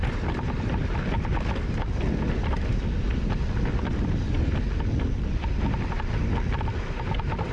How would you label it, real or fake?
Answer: real